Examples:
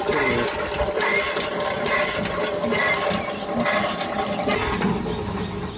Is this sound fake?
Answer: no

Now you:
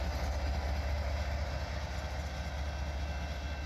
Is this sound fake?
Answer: no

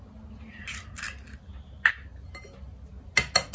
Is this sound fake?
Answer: no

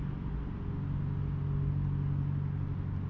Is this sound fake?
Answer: no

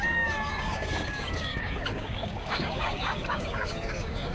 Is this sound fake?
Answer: yes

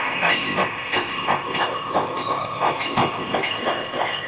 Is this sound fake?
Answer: yes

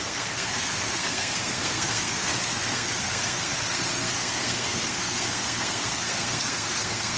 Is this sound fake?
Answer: yes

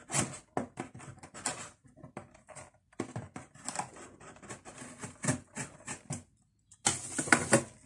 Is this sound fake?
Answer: no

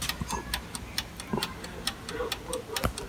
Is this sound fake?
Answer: no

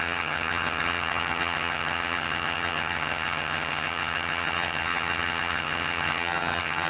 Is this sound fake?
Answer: yes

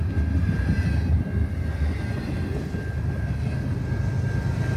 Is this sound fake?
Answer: no